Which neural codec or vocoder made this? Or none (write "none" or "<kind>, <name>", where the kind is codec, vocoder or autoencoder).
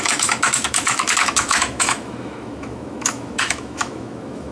autoencoder, DAC-VAE